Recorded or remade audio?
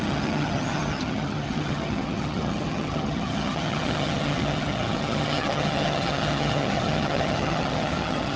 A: remade